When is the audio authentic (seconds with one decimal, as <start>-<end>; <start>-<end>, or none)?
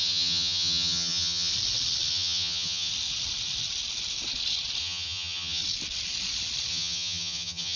1.5-2.1; 2.9-4.8; 5.6-6.7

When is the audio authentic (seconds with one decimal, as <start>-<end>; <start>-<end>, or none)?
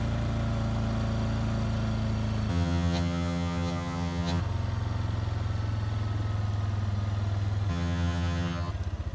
0.0-2.5; 4.4-7.7; 8.7-9.1